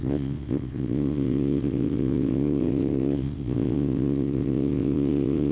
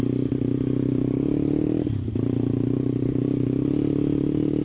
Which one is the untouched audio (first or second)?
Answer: second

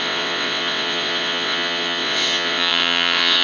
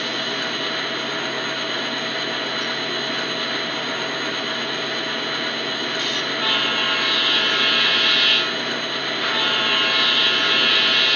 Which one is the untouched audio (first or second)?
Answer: second